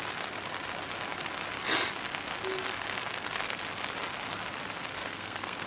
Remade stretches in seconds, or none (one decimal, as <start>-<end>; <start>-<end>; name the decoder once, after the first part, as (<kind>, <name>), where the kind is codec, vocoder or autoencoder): 5.0-5.7 (codec, SNAC)